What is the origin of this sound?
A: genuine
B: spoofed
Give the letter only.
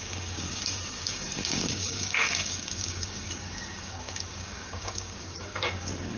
B